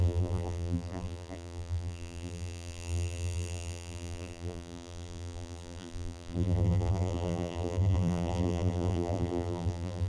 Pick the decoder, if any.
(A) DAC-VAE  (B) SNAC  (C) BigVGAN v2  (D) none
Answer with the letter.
C